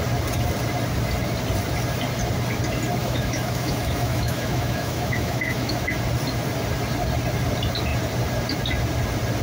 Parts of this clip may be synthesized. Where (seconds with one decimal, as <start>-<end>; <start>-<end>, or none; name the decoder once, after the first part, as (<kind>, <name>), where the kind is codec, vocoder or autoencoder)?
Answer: 3.0-5.9 (autoencoder, DAC-VAE)